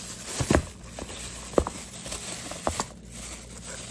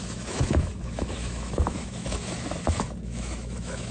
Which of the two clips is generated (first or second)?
second